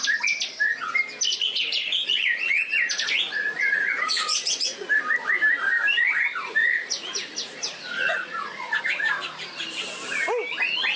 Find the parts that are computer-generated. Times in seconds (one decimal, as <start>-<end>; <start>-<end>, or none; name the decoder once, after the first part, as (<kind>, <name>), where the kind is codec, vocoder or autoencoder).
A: 1.3-4.9 (vocoder, Vocos); 6.6-8.8

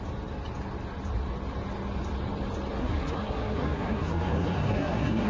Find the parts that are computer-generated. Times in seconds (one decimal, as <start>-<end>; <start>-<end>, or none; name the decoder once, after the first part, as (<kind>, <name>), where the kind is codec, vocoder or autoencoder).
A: 2.8-5.3 (codec, SNAC)

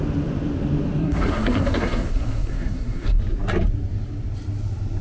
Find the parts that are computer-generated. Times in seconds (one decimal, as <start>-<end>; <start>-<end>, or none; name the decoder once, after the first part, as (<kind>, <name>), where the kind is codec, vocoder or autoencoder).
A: 1.0-3.2 (codec, SNAC)

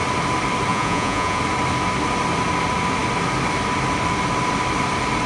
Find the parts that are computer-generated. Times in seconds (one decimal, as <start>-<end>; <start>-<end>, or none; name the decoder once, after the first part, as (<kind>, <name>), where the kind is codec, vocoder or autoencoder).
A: 0.7-1.4 (vocoder, Vocos)

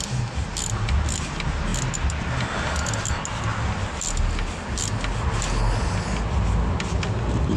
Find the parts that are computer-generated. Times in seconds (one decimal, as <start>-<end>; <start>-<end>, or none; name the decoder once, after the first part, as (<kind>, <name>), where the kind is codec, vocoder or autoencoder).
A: none